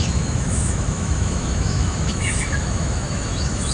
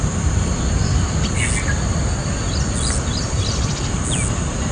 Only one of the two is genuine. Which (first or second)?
second